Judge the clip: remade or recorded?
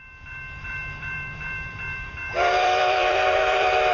remade